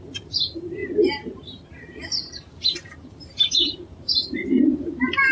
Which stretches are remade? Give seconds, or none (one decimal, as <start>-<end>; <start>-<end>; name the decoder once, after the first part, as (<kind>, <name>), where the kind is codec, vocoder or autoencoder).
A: 0.0-4.4 (vocoder, BigVGAN v2)